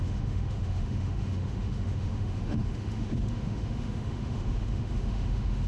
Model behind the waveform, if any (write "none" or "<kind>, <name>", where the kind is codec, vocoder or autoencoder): autoencoder, DAC-VAE